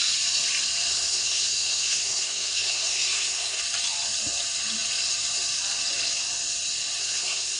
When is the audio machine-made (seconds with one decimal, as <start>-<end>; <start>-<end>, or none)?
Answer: 0.9-3.6; 7.0-7.6